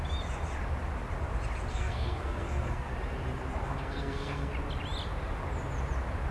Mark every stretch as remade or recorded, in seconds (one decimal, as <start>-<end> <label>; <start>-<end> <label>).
0.0-1.7 recorded; 1.7-2.9 remade; 2.9-3.6 recorded; 3.6-4.5 remade; 4.5-6.3 recorded